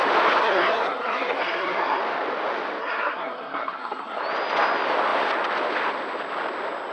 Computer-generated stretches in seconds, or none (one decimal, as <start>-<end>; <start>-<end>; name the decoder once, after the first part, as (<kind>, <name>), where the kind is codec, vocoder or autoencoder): 0.4-2.0 (codec, SNAC); 2.8-4.2